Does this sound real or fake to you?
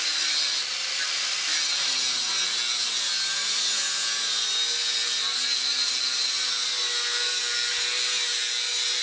real